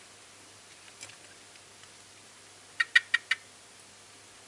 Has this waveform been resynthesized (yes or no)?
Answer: no